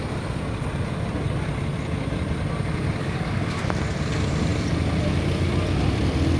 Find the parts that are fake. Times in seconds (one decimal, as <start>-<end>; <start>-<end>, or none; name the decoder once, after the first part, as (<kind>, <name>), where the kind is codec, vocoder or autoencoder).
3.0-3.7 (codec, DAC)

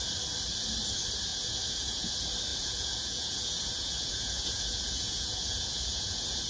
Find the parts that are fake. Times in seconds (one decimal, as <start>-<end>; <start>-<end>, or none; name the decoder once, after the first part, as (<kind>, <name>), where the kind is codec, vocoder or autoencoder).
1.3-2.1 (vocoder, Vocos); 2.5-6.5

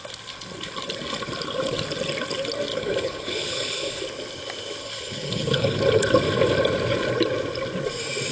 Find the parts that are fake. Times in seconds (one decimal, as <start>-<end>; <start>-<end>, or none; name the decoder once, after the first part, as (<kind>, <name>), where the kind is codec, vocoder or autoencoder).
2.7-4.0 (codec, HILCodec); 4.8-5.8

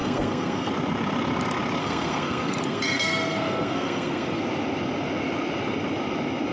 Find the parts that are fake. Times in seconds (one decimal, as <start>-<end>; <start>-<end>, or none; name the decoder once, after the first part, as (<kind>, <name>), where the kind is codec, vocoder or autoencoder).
0.0-0.7 (codec, SNAC); 1.8-4.4